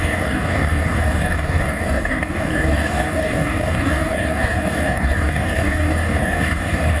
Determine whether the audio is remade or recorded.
remade